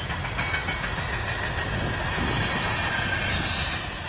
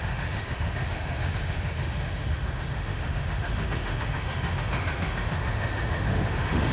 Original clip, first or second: first